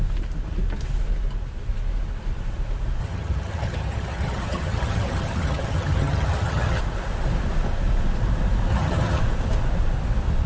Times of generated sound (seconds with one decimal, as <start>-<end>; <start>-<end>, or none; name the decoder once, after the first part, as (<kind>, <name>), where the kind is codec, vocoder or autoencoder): 3.0-6.8 (vocoder, HiFi-GAN); 8.7-9.2